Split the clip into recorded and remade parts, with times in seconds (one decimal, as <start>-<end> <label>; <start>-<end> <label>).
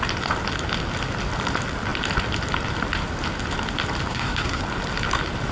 0.0-4.1 recorded; 4.1-4.6 remade; 4.6-5.5 recorded